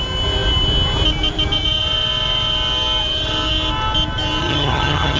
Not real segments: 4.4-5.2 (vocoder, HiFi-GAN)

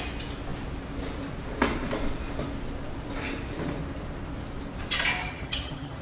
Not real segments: 5.2-6.0 (vocoder, HiFi-GAN)